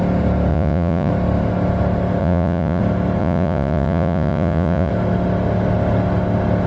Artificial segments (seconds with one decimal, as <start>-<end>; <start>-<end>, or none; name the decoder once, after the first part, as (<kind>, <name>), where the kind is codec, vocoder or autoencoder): 0.5-1.1 (vocoder, Vocos); 2.2-2.8; 3.2-4.9